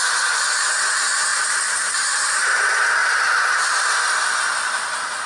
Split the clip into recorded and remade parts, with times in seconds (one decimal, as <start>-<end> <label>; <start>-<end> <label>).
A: 0.0-1.3 recorded; 1.3-1.9 remade; 1.9-3.0 recorded; 3.0-3.9 remade; 3.9-5.3 recorded